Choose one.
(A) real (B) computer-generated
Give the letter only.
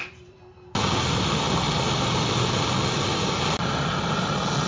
A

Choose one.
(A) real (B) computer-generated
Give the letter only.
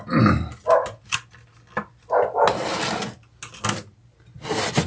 A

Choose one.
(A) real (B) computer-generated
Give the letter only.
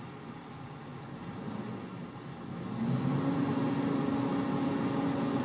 A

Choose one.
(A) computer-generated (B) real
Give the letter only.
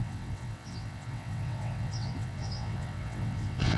A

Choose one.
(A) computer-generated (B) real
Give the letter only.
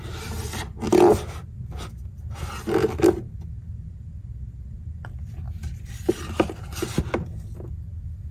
B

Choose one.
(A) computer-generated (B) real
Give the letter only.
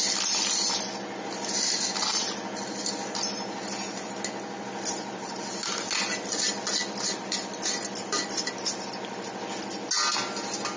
B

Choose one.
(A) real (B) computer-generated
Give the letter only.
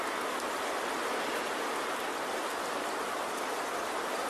A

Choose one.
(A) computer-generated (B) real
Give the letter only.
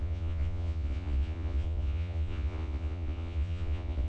A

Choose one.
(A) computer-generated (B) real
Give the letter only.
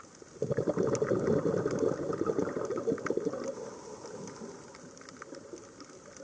B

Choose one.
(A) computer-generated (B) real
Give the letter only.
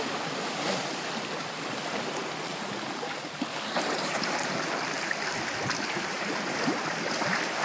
B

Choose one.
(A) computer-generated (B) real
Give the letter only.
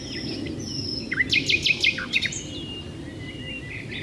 B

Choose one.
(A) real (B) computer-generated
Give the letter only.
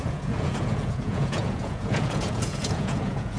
B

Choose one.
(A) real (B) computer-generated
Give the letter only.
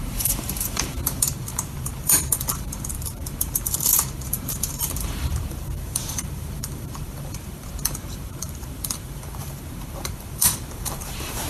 B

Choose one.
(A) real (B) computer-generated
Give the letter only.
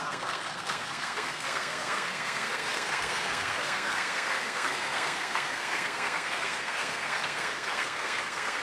B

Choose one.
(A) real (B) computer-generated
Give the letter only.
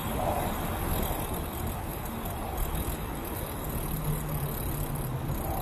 A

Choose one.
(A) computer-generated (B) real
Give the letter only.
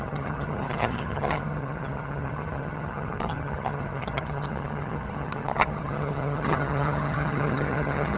A